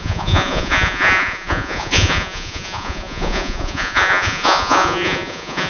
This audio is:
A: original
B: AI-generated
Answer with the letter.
B